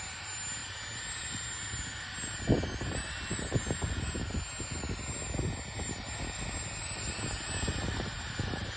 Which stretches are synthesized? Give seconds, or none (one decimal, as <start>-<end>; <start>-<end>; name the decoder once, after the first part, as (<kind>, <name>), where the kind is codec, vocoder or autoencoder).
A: none